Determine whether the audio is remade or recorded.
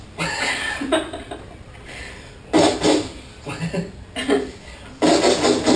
recorded